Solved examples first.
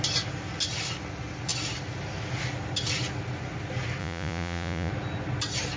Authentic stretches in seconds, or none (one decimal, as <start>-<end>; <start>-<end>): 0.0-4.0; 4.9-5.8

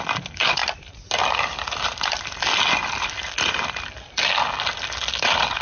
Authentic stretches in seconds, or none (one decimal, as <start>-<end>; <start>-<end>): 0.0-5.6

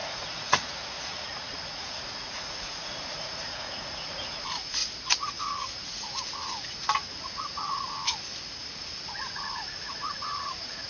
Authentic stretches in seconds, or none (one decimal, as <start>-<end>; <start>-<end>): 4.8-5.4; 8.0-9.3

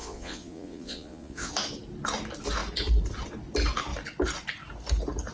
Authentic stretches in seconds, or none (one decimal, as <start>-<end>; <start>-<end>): 1.5-5.3

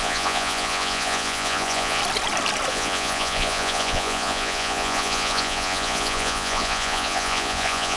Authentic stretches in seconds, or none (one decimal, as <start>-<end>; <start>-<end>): 2.0-2.7

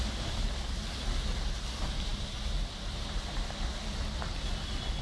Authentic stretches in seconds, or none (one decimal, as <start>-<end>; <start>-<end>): 0.0-5.0

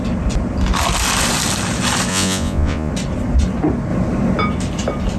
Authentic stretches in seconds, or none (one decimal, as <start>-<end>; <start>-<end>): 0.0-2.1; 2.9-5.2

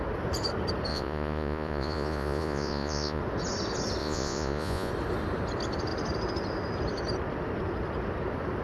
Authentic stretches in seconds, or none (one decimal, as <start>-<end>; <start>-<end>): 0.0-0.9; 3.2-4.0; 4.9-8.6